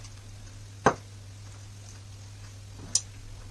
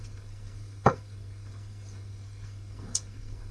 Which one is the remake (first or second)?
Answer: second